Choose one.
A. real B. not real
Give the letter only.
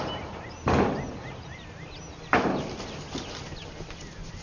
A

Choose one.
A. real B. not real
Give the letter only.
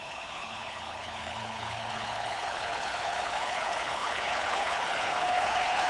B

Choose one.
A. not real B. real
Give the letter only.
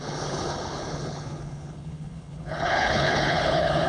A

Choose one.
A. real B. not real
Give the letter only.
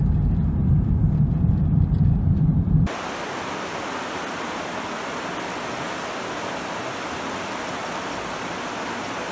A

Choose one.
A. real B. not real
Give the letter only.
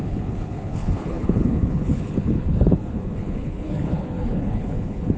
B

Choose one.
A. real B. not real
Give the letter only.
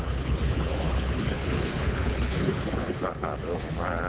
B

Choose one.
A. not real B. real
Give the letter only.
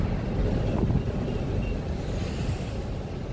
B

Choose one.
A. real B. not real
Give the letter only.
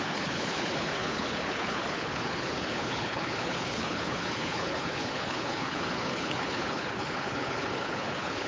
B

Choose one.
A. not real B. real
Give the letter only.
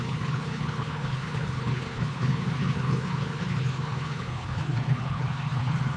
A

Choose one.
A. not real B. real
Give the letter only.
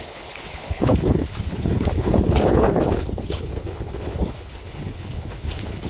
A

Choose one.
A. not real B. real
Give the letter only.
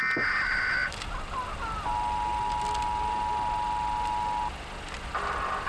B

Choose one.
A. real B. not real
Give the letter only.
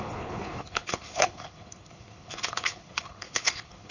B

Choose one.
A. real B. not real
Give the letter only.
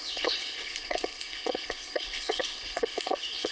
B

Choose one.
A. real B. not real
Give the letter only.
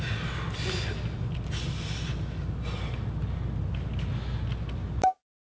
A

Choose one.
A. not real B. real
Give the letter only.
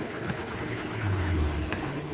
A